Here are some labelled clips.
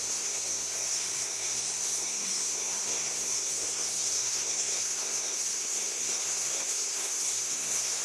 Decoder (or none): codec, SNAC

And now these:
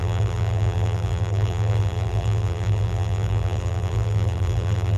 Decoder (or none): vocoder, BigVGAN v2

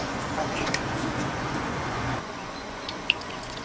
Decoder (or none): vocoder, Vocos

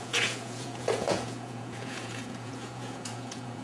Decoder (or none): vocoder, Vocos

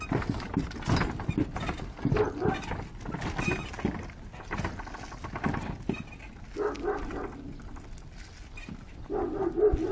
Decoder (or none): none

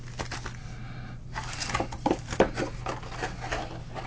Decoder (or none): none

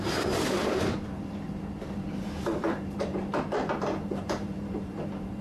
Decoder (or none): vocoder, BigVGAN v2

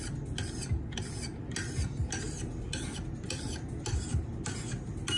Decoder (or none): none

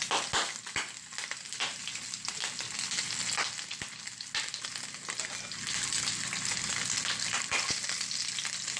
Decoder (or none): none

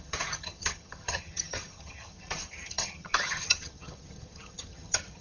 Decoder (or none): vocoder, HiFi-GAN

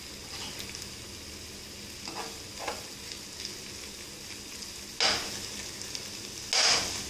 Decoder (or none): none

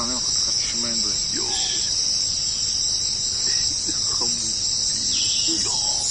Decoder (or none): none